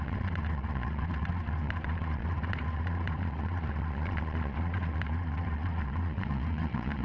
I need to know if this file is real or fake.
fake